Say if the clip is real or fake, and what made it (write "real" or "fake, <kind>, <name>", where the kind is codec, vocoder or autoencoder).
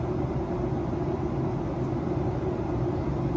real